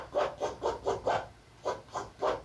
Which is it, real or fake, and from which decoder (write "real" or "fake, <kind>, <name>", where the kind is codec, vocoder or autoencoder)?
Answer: real